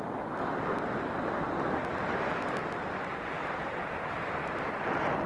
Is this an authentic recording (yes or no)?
yes